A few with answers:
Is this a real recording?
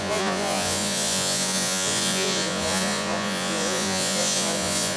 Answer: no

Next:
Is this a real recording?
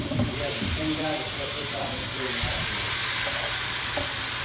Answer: no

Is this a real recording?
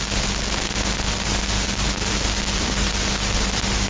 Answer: yes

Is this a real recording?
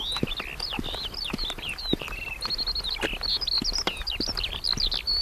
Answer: yes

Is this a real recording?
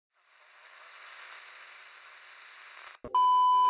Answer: yes